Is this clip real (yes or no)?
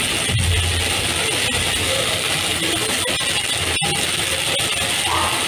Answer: yes